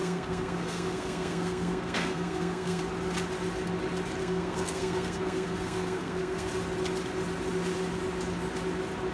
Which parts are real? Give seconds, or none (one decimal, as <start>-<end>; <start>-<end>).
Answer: 2.8-4.2; 6.5-9.1